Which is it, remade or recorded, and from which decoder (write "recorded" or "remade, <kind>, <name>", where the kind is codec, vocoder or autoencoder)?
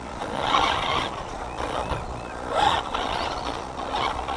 remade, vocoder, Vocos